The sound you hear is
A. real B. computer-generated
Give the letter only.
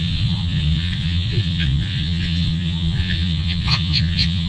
B